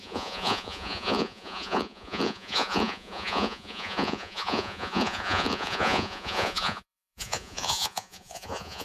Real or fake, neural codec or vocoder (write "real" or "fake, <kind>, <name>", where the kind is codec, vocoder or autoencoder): fake, vocoder, Vocos